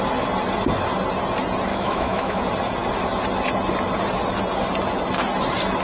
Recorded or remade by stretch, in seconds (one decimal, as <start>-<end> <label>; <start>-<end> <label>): 0.0-1.7 recorded; 1.7-2.4 remade; 2.4-5.8 recorded